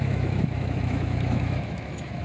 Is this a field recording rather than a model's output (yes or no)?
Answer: no